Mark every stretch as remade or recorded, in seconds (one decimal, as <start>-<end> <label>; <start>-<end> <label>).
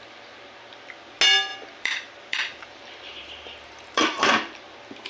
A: 0.0-1.5 recorded; 1.5-4.6 remade; 4.6-5.1 recorded